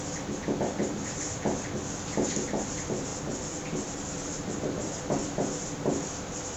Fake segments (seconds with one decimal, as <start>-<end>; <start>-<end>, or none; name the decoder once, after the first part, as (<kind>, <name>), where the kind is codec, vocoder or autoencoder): 3.1-6.6 (vocoder, BigVGAN v2)